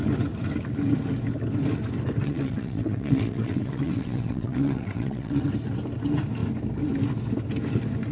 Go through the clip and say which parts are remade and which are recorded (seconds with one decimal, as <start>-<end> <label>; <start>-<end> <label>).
0.0-2.2 recorded; 2.2-5.4 remade; 5.4-8.1 recorded